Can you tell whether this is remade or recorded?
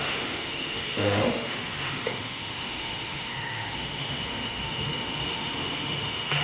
remade